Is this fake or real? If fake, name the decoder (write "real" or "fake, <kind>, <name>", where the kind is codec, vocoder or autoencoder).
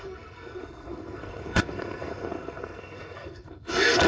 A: fake, codec, SNAC